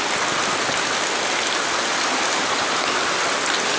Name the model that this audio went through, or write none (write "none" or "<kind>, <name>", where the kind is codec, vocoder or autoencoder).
none